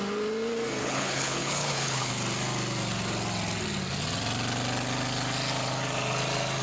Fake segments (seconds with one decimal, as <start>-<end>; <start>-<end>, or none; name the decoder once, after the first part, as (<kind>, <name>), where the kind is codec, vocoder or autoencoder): 0.8-2.1 (codec, HILCodec)